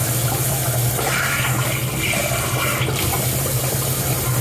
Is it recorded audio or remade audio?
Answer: recorded